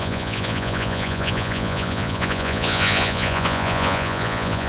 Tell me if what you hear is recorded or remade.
remade